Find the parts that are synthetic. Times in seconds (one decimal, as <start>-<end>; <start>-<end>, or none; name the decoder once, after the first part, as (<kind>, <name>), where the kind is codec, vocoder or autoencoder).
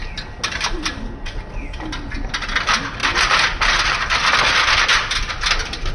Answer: none